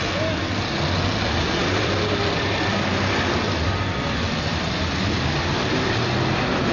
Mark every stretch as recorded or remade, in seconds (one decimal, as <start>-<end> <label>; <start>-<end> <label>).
0.0-6.7 recorded